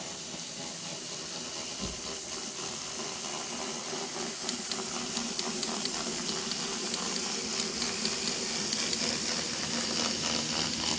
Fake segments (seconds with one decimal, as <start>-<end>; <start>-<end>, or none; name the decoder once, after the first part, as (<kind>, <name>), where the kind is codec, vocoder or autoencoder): none